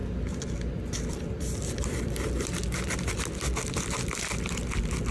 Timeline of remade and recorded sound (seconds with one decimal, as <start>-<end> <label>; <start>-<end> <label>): 0.0-5.1 recorded